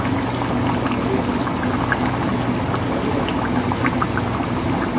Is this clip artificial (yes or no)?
no